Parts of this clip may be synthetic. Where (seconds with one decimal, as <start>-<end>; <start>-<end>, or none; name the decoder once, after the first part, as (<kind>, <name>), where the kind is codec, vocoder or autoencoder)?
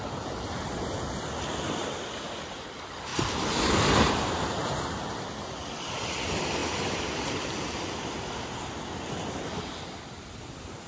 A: none